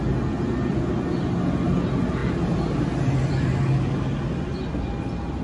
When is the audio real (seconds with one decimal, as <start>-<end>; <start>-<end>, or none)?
0.0-5.4